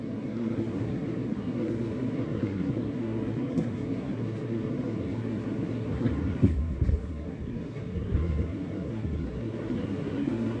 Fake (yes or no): yes